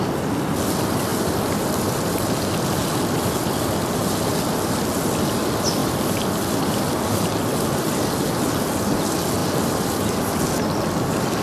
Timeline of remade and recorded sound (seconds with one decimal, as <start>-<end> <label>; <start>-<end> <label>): 0.0-1.1 recorded; 1.1-2.2 remade; 2.2-5.8 recorded; 5.8-6.9 remade; 6.9-9.4 recorded; 9.4-10.4 remade; 10.4-11.4 recorded